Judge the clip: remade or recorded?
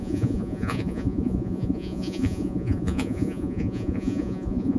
remade